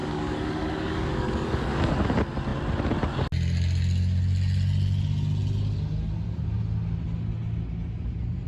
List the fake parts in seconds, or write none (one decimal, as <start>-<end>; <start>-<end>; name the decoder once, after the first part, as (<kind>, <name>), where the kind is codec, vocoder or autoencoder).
0.0-1.9 (codec, DAC)